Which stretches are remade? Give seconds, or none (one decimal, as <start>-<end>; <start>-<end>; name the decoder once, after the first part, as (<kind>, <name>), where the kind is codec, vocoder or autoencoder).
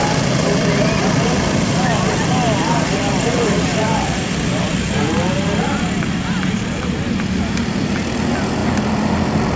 none